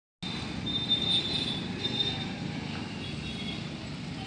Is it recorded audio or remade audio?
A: recorded